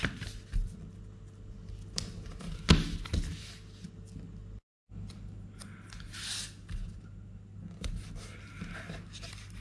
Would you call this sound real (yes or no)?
yes